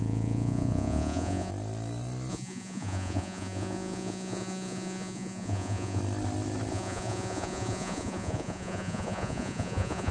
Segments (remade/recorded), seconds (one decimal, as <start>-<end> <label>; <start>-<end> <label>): 0.0-1.5 remade; 1.5-2.3 recorded; 2.3-6.0 remade; 6.0-6.7 recorded; 6.7-10.1 remade

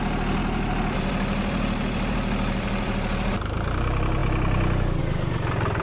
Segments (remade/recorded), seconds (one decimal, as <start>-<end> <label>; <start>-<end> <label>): 0.0-0.4 recorded; 0.4-3.3 remade; 3.3-5.8 recorded

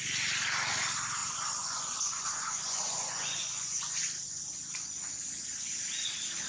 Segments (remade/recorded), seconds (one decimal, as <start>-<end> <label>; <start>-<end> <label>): 0.0-1.2 recorded; 1.2-5.1 remade; 5.1-6.5 recorded

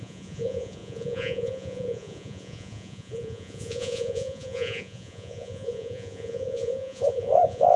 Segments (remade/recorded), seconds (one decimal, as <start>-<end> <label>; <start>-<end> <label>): 0.0-7.8 remade

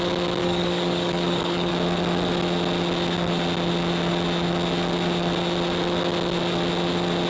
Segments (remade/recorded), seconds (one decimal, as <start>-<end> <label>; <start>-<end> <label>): 0.0-0.4 recorded; 0.4-1.7 remade; 1.7-7.3 recorded

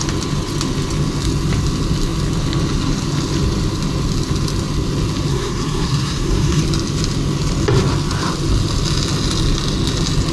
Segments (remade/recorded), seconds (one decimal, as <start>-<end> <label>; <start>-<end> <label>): 0.0-5.3 recorded; 5.3-6.6 remade; 6.6-10.3 recorded

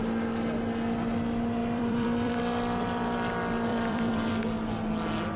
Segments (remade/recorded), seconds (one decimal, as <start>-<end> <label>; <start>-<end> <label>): 0.0-1.6 recorded; 1.6-2.4 remade; 2.4-3.7 recorded; 3.7-4.3 remade; 4.3-5.4 recorded